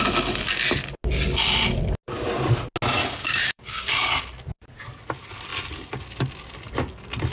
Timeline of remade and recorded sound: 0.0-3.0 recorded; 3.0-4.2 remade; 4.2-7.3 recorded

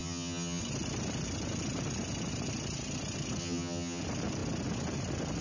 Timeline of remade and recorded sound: 0.0-0.6 remade; 0.6-3.4 recorded; 3.4-4.0 remade; 4.0-5.4 recorded

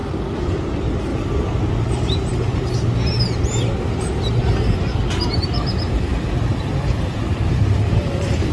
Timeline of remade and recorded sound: 0.0-0.6 recorded; 0.6-4.4 remade; 4.4-5.4 recorded; 5.4-8.5 remade

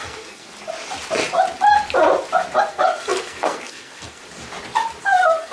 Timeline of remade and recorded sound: 0.0-0.5 remade; 0.5-2.7 recorded; 2.7-4.2 remade; 4.2-5.0 recorded; 5.0-5.5 remade

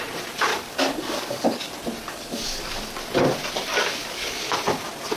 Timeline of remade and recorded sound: 0.0-0.5 recorded; 0.5-1.7 remade; 1.7-2.1 recorded; 2.1-2.8 remade; 2.8-3.7 recorded; 3.7-4.5 remade; 4.5-5.2 recorded

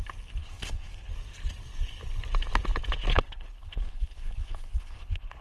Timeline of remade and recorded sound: 0.0-0.4 recorded; 0.4-1.1 remade; 1.1-3.1 recorded; 3.1-5.4 remade

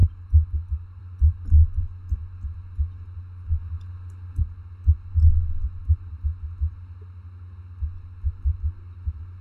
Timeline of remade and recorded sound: 0.0-9.4 recorded